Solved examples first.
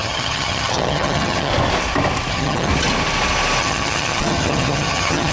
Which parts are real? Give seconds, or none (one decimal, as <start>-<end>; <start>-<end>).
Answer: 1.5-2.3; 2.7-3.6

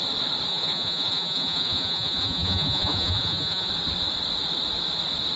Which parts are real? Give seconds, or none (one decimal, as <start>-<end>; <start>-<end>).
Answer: 0.0-0.5; 3.7-5.4

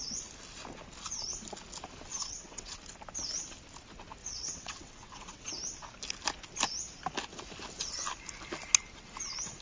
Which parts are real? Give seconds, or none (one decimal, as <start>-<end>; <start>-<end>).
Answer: 0.0-2.1; 2.8-4.2; 5.5-9.6

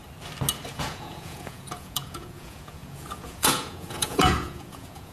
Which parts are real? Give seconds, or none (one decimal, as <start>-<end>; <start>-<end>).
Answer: 0.0-0.7

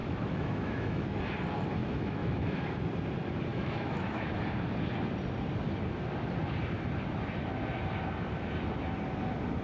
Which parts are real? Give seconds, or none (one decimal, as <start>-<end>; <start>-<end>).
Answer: 1.2-1.8; 2.6-3.5; 4.3-9.6